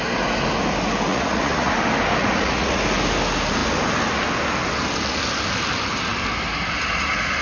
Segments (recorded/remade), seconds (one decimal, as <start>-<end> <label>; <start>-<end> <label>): 0.0-1.1 recorded; 1.1-1.7 remade; 1.7-2.2 recorded; 2.2-2.8 remade; 2.8-7.4 recorded